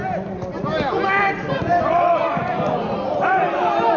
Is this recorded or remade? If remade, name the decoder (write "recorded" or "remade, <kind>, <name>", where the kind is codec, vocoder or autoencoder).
recorded